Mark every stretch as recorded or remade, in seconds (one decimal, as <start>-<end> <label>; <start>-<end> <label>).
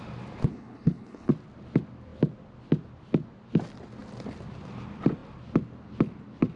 0.0-0.5 recorded; 0.5-1.3 remade; 1.3-6.6 recorded